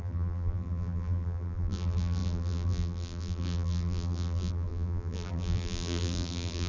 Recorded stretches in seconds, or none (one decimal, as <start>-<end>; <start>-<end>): none